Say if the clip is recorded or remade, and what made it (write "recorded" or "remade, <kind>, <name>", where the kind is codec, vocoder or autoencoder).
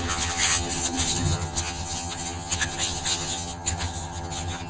remade, vocoder, HiFi-GAN